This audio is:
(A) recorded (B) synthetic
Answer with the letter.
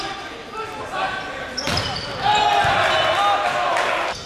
A